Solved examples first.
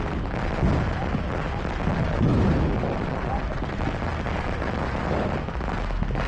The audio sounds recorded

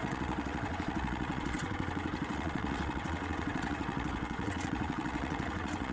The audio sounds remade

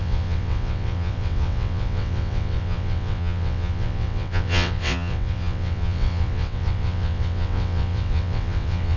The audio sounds remade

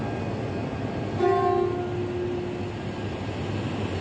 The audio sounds recorded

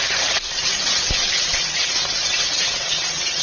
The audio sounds remade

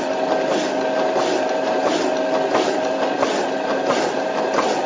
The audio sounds recorded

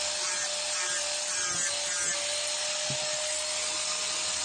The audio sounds recorded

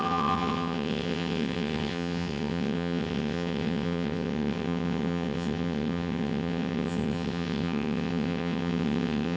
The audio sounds remade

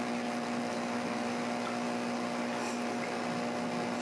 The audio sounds recorded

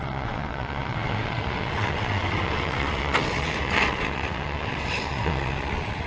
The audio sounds remade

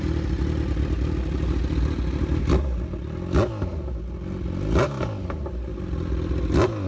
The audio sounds recorded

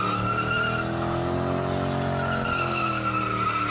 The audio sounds recorded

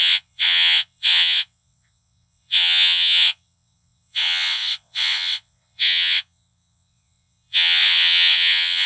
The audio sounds remade